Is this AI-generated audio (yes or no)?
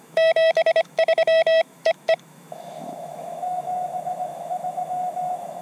yes